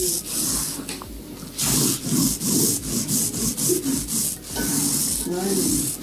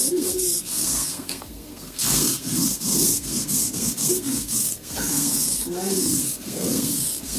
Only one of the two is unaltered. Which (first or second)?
first